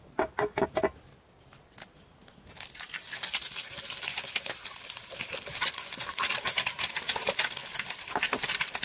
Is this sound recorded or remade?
recorded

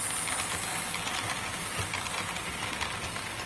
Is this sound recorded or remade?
recorded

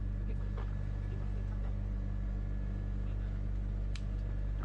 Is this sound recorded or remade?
recorded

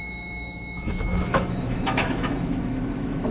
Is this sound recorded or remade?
remade